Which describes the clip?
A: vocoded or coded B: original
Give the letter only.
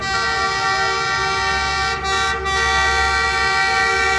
B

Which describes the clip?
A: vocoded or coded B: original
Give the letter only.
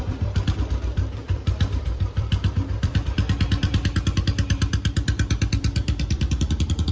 A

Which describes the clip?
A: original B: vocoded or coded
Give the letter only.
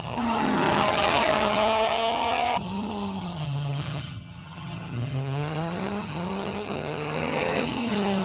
B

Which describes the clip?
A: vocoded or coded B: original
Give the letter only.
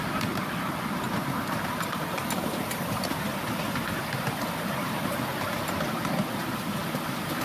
B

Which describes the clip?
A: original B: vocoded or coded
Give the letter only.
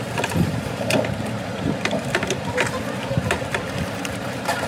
B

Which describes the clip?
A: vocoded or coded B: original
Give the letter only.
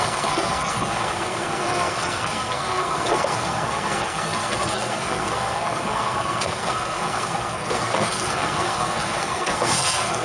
A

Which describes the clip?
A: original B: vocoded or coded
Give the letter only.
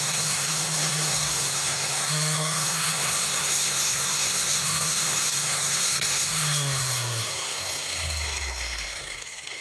B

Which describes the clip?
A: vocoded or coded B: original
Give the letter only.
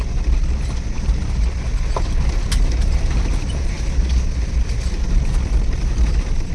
B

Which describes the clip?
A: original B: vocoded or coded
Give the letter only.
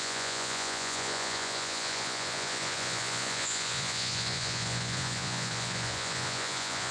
B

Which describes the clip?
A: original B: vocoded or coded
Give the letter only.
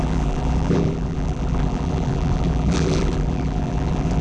B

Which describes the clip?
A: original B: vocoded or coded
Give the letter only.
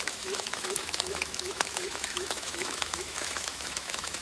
B